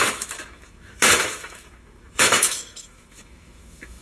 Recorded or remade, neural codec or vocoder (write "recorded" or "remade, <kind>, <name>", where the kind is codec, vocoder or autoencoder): remade, autoencoder, DAC-VAE